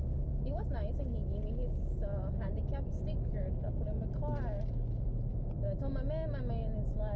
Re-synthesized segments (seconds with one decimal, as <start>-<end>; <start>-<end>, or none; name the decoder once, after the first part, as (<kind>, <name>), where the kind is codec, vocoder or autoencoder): none

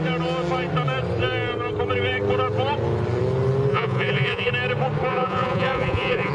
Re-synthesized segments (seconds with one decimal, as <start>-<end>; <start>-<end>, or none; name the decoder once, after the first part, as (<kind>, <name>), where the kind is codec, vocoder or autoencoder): 3.7-4.5 (vocoder, Vocos); 5.1-6.3

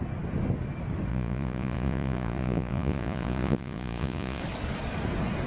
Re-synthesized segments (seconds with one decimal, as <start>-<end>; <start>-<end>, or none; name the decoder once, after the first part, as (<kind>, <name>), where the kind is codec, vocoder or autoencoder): 1.1-4.4 (vocoder, Vocos)